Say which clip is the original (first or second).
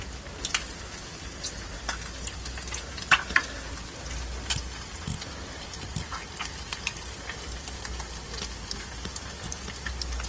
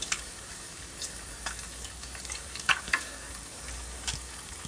first